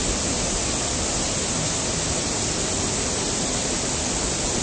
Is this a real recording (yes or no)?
yes